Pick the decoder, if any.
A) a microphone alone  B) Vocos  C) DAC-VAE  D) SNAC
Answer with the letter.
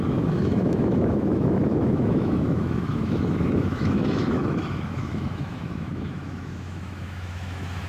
C